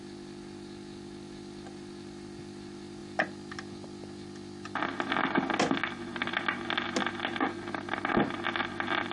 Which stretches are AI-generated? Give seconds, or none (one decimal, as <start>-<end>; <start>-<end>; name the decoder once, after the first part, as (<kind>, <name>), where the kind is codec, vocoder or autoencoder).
none